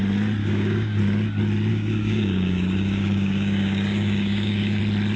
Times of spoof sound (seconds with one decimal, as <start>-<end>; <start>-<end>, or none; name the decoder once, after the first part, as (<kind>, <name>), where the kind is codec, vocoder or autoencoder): 0.4-1.0 (codec, DAC); 1.7-4.8